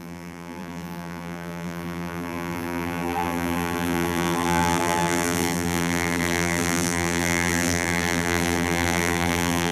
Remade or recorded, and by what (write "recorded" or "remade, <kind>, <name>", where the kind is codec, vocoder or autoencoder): remade, vocoder, BigVGAN v2